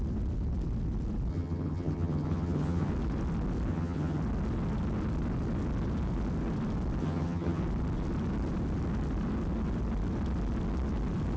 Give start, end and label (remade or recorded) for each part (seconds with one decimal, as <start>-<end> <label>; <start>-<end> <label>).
0.0-1.3 recorded; 1.3-2.9 remade; 2.9-3.7 recorded; 3.7-4.2 remade; 4.2-7.0 recorded; 7.0-7.6 remade; 7.6-11.4 recorded